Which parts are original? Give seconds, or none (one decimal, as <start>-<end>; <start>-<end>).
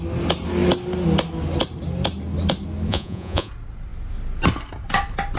0.0-2.9; 3.5-5.4